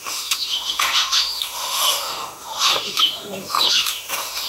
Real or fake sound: fake